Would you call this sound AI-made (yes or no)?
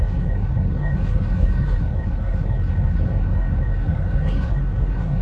yes